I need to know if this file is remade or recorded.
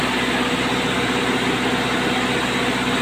recorded